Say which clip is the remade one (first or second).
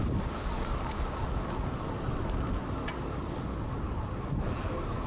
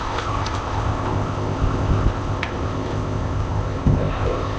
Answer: second